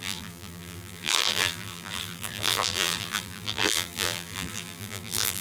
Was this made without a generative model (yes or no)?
no